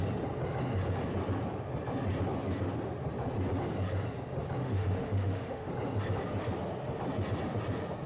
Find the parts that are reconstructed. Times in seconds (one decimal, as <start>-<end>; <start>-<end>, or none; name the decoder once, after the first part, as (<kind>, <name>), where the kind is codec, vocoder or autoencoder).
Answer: 4.6-5.7 (autoencoder, DAC-VAE)